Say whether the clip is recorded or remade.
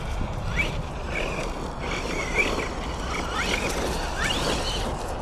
recorded